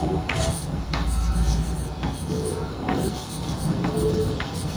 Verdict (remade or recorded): remade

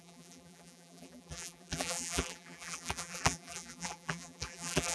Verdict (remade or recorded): remade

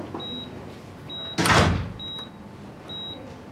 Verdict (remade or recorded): recorded